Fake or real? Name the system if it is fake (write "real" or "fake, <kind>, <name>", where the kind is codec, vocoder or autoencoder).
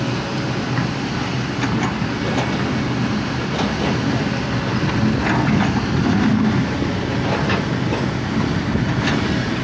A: real